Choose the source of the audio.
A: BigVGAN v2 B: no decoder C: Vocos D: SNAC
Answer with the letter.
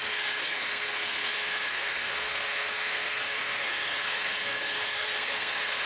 D